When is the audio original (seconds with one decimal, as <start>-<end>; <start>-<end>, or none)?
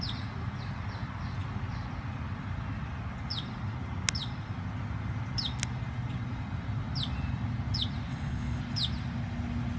0.0-8.1; 8.6-9.8